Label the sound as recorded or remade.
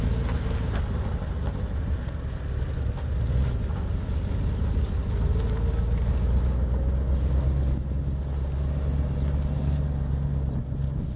recorded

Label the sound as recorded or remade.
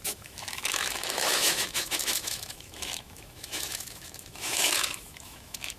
remade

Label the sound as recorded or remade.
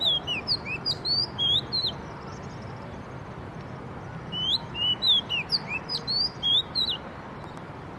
remade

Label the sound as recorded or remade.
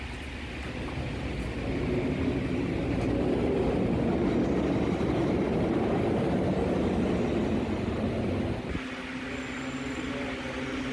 recorded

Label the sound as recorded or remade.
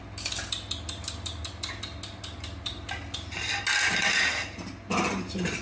recorded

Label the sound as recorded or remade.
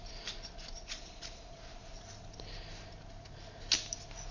recorded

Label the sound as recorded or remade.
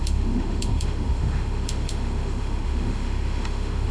remade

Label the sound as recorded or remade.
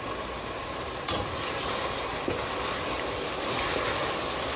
recorded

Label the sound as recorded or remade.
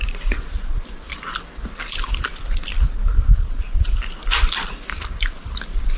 remade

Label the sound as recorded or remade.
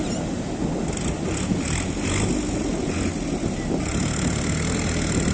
recorded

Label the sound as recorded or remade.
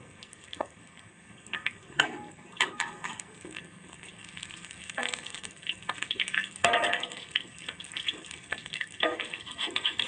remade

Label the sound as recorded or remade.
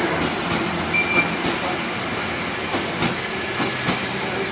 recorded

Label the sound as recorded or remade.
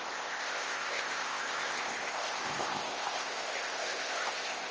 remade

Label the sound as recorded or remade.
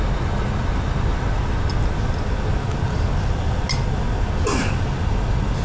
recorded